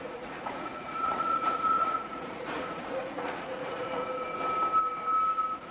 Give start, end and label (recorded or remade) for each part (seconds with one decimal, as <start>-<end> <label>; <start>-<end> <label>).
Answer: 0.0-4.0 remade; 4.0-5.7 recorded

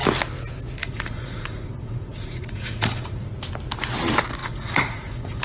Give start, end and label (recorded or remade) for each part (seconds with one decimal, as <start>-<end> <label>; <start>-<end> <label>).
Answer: 0.0-0.8 recorded; 0.8-3.3 remade; 3.3-4.4 recorded; 4.4-5.4 remade

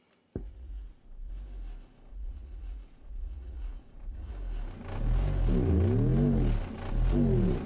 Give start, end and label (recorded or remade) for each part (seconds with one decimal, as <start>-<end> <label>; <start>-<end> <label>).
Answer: 0.0-0.5 recorded; 0.5-1.3 remade; 1.3-2.1 recorded; 2.1-4.3 remade; 4.3-7.7 recorded

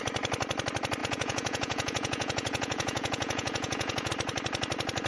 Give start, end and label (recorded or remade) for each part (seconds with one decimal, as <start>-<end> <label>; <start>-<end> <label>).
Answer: 0.0-1.0 recorded; 1.0-4.1 remade; 4.1-5.1 recorded

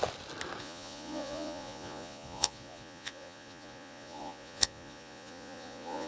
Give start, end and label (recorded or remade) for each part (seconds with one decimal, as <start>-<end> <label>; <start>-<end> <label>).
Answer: 0.0-0.6 recorded; 0.6-6.1 remade